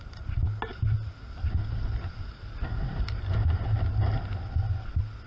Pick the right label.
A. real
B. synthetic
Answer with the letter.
A